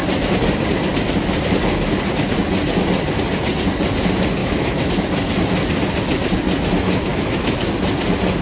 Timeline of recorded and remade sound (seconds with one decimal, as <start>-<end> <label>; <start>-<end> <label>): 0.0-4.4 recorded; 4.4-4.9 remade; 4.9-7.1 recorded; 7.1-7.7 remade; 7.7-8.4 recorded